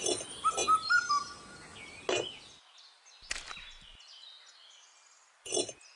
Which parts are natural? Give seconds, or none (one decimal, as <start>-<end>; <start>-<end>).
0.0-6.0